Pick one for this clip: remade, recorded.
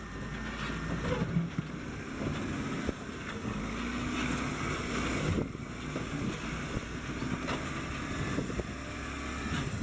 recorded